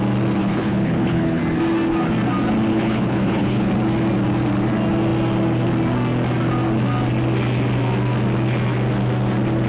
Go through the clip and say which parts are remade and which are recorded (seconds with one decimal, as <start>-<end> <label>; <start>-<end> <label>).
0.0-0.4 recorded; 0.4-1.4 remade; 1.4-2.7 recorded; 2.7-3.7 remade; 3.7-9.7 recorded